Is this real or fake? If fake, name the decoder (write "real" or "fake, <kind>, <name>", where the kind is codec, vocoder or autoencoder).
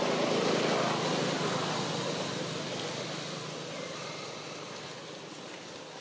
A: real